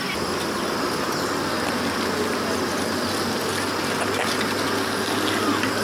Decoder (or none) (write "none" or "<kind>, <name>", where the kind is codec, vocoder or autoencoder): none